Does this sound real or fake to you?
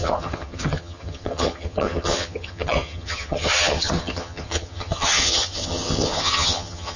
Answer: fake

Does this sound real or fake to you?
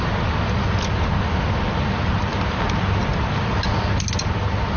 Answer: real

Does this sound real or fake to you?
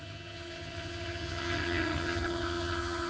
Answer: fake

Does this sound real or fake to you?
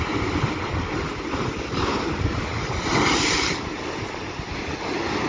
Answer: real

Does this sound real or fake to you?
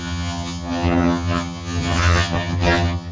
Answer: fake